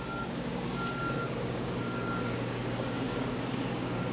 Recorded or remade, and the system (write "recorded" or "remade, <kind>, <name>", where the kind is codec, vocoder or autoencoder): remade, codec, DAC